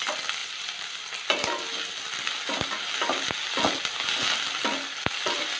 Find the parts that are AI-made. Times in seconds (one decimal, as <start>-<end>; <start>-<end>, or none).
none